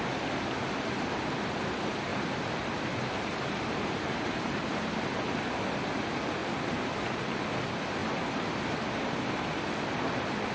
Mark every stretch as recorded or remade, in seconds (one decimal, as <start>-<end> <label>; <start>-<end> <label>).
0.0-2.1 recorded; 2.1-5.1 remade; 5.1-6.4 recorded; 6.4-7.4 remade; 7.4-8.0 recorded; 8.0-9.8 remade; 9.8-10.5 recorded